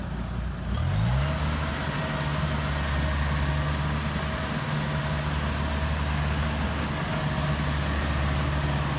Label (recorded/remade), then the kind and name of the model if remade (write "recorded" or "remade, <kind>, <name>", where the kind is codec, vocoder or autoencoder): recorded